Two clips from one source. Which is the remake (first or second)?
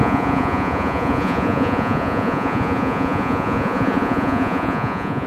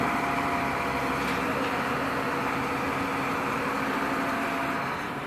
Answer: first